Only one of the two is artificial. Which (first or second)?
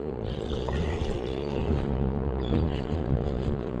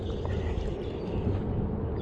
first